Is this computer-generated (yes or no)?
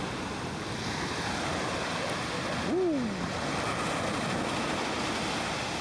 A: no